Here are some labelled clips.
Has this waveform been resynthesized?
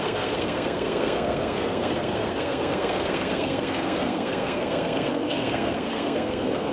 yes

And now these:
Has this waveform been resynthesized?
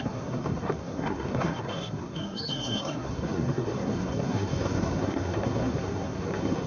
yes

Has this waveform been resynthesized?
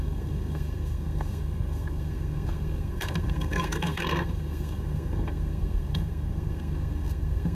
yes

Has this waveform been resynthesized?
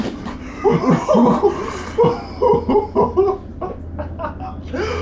no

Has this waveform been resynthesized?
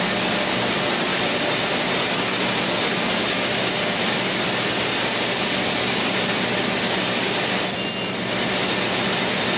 no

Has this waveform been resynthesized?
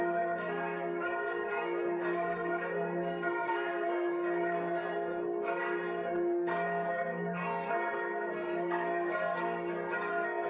yes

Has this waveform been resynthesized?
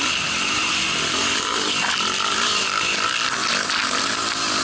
no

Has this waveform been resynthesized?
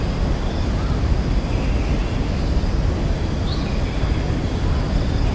no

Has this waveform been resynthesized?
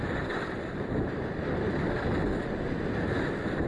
no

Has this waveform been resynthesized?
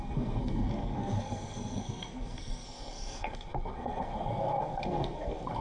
yes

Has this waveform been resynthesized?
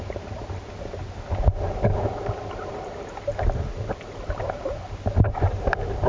no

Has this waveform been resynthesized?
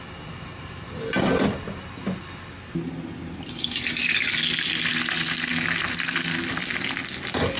no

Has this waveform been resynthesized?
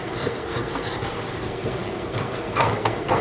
yes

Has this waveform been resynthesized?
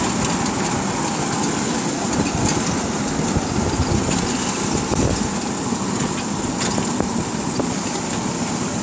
no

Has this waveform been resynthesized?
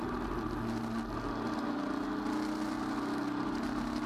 no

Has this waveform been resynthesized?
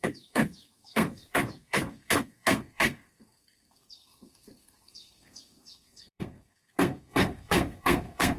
yes